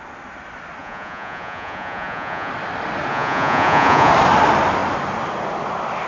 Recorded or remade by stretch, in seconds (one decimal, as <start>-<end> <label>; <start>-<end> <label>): 0.0-0.8 recorded; 0.8-2.5 remade; 2.5-3.1 recorded; 3.1-4.1 remade; 4.1-6.1 recorded